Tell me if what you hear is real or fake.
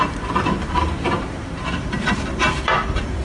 fake